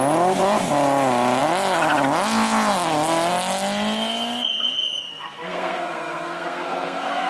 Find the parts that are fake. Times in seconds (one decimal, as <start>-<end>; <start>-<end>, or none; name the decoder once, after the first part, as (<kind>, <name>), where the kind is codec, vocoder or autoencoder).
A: 5.1-7.3 (codec, SNAC)